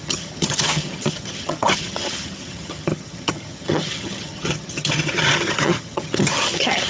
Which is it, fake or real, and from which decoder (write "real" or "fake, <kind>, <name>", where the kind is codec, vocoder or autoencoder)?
fake, vocoder, HiFi-GAN